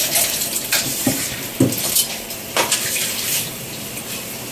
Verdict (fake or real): fake